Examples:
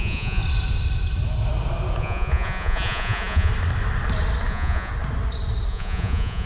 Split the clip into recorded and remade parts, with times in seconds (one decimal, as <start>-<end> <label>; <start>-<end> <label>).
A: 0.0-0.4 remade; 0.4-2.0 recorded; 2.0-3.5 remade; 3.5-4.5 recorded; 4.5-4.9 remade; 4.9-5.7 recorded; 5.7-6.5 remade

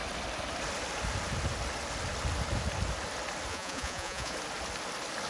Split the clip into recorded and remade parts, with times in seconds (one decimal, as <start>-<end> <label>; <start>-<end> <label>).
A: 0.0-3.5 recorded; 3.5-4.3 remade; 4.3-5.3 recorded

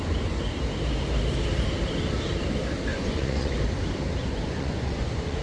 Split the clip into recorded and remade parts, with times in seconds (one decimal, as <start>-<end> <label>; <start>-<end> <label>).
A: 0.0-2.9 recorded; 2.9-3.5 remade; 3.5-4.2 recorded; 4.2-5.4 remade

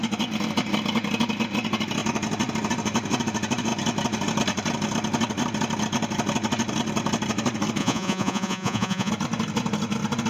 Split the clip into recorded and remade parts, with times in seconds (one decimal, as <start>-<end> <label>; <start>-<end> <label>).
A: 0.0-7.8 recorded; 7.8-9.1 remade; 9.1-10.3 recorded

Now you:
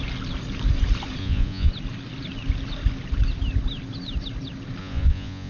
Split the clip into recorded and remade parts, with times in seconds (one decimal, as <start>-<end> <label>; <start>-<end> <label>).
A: 0.0-1.2 recorded; 1.2-1.7 remade; 1.7-4.8 recorded; 4.8-5.5 remade

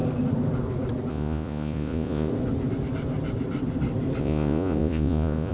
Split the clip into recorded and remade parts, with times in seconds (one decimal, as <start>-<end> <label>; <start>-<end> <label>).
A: 0.0-1.1 recorded; 1.1-2.3 remade; 2.3-4.2 recorded; 4.2-5.5 remade